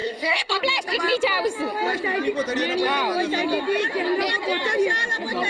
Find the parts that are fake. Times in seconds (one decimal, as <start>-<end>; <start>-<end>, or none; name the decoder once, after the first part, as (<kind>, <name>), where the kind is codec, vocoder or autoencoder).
0.0-0.6 (codec, SNAC)